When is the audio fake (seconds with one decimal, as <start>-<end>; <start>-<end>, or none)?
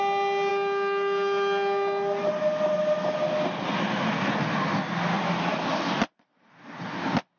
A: none